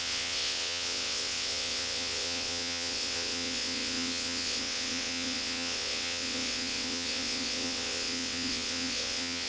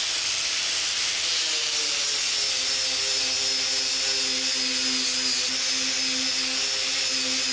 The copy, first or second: first